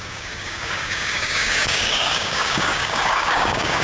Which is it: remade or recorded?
remade